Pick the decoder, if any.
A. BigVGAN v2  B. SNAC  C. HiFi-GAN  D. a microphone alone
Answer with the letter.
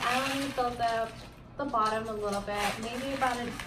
D